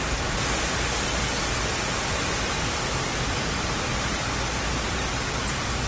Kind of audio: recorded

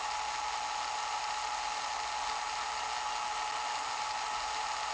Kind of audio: recorded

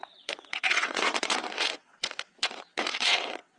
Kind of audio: remade